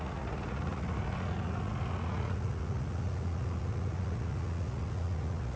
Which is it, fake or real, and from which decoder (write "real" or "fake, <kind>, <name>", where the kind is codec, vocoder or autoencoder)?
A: fake, vocoder, Vocos